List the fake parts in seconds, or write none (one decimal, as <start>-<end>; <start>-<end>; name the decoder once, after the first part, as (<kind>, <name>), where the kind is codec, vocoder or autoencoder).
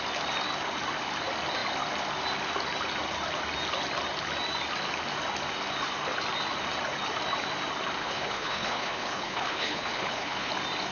8.0-10.5 (codec, HILCodec)